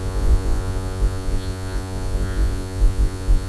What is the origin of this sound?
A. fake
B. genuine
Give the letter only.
A